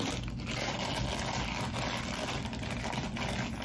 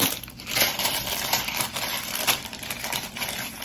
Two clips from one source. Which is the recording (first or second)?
first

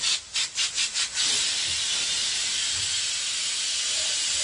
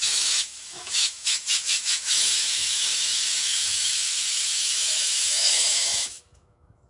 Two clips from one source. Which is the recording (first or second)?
first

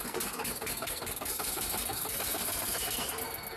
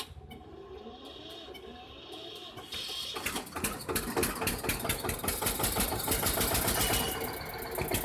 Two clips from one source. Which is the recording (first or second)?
second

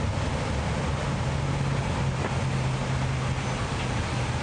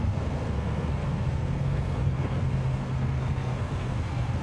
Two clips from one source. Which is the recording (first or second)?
first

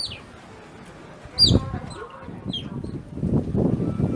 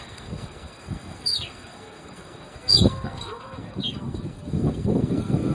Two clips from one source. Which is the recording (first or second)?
first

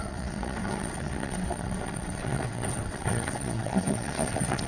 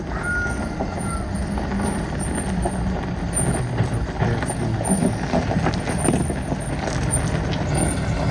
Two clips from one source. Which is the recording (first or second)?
second